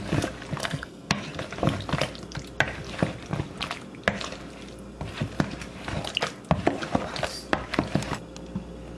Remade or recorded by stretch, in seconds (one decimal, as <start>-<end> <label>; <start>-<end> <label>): 0.0-0.6 recorded; 0.6-1.2 remade; 1.2-9.0 recorded